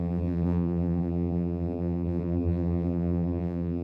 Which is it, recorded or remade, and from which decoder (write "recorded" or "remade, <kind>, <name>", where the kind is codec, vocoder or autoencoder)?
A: remade, vocoder, BigVGAN v2